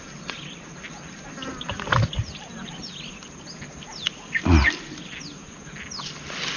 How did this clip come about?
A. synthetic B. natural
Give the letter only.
B